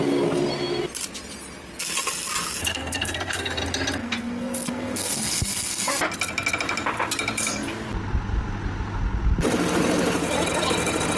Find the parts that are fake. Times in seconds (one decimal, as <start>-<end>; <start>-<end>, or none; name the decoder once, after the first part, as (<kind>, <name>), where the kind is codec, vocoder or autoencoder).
2.7-3.6 (codec, SNAC); 4.0-5.9